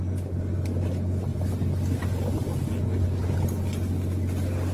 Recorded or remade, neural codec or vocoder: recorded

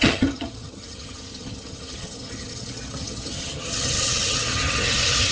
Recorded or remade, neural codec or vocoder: remade, vocoder, HiFi-GAN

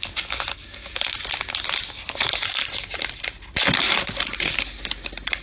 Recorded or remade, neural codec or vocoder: recorded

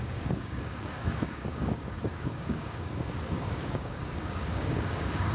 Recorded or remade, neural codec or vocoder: remade, codec, DAC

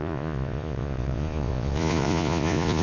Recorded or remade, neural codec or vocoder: remade, vocoder, Vocos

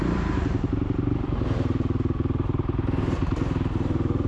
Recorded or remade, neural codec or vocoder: remade, vocoder, BigVGAN v2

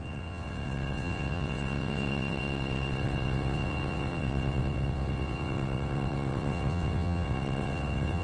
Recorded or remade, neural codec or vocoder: remade, vocoder, WaveNeXt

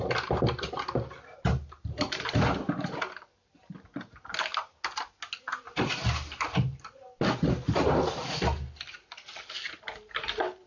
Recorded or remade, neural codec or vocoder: recorded